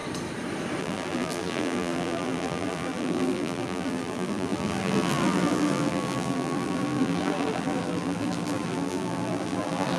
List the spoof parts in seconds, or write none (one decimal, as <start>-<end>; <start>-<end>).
0.8-10.0